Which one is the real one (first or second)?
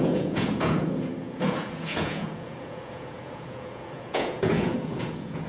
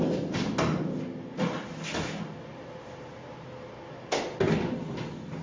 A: second